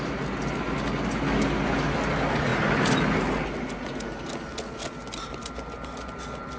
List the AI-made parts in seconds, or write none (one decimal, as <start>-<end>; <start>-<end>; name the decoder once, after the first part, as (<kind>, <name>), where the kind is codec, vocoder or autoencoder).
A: none